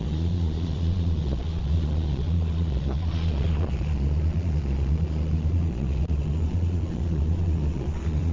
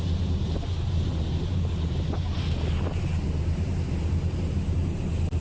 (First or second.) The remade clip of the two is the first